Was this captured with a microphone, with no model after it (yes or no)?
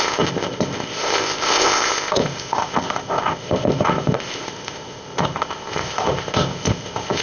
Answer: no